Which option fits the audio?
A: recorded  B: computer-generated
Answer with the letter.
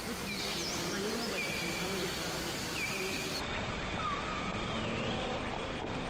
A